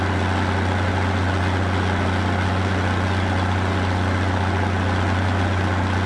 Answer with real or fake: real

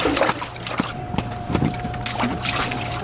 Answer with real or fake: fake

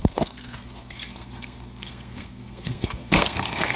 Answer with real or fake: fake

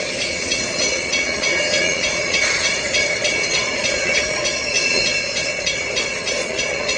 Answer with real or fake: fake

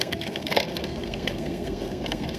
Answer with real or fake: fake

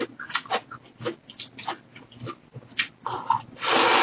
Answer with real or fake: real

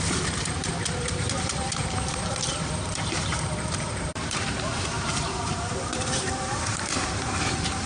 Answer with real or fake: fake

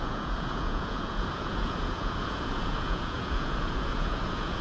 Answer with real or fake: fake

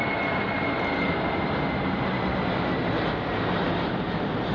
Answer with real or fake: real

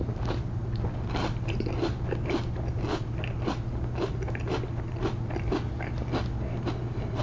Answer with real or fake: real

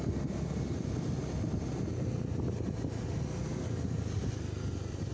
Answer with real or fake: real